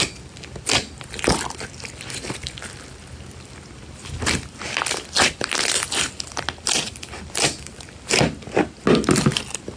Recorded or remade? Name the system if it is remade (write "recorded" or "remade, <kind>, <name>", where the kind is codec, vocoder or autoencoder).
recorded